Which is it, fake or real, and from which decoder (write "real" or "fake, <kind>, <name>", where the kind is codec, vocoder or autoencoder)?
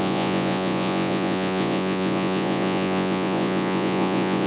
fake, vocoder, Vocos